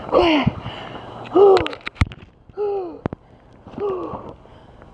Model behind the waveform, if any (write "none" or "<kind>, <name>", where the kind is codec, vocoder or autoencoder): none